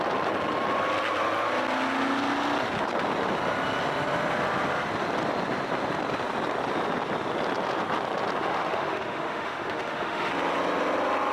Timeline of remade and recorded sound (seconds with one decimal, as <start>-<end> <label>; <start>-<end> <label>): 0.0-8.4 recorded; 8.4-10.3 remade; 10.3-11.3 recorded